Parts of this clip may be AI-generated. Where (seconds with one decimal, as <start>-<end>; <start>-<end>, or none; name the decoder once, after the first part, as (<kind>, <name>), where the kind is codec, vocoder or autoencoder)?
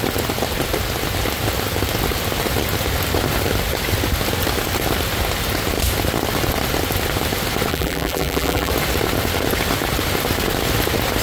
7.7-8.7 (vocoder, BigVGAN v2)